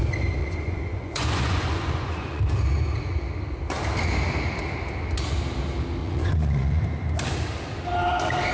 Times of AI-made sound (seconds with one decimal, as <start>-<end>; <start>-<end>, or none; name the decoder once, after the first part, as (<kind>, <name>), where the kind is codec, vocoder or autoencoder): 0.4-2.4 (vocoder, Vocos); 6.0-6.8